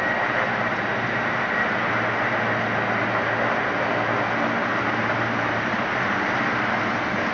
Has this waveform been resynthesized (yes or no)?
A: no